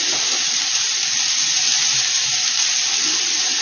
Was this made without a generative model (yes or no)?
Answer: yes